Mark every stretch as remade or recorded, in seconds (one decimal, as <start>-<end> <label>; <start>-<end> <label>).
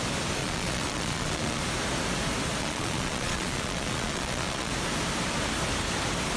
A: 0.0-0.4 recorded; 0.4-1.6 remade; 1.6-2.6 recorded; 2.6-4.7 remade; 4.7-6.4 recorded